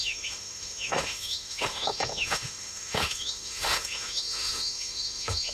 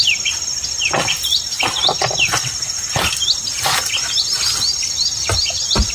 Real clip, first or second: second